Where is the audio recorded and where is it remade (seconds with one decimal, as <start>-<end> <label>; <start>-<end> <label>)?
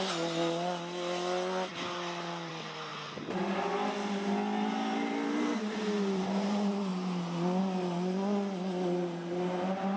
0.0-10.0 recorded